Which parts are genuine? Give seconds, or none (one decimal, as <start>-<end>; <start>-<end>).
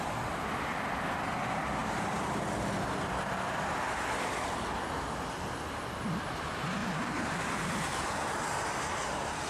0.0-1.8; 2.4-6.8; 8.8-9.5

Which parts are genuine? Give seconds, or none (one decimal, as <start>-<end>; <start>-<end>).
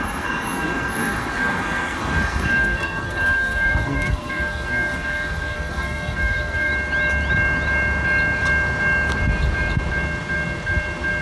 6.7-11.2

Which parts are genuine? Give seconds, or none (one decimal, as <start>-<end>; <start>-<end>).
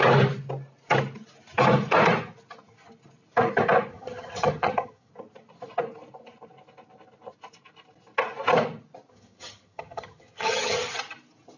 0.0-3.9; 5.1-9.1; 10.9-11.6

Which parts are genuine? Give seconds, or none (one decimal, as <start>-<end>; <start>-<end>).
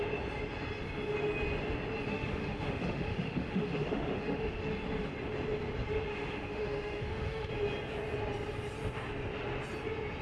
0.0-2.1; 4.6-6.1; 7.5-10.2